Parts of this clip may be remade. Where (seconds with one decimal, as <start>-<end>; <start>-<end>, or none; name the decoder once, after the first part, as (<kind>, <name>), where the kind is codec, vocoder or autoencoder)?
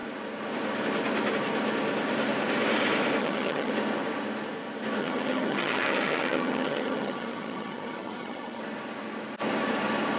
3.2-3.7 (vocoder, HiFi-GAN); 5.0-8.6